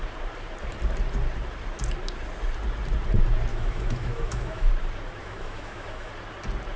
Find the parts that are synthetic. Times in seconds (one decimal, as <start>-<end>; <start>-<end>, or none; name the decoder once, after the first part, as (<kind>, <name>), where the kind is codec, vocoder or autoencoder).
3.5-4.7 (autoencoder, DAC-VAE); 5.2-6.1